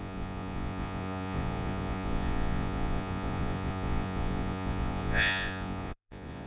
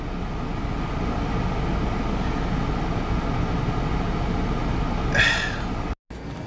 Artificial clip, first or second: first